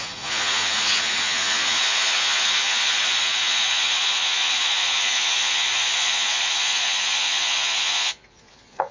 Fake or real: fake